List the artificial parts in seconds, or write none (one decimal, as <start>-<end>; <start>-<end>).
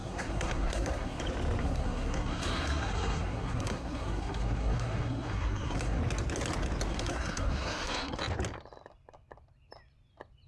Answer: 0.0-1.2; 1.6-6.0; 6.9-8.2